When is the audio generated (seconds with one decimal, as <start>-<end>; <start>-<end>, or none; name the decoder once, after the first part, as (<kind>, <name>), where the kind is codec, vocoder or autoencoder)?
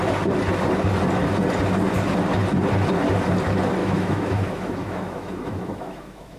3.8-6.4 (autoencoder, DAC-VAE)